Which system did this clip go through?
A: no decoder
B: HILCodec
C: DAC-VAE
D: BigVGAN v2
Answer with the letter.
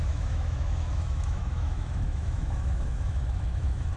C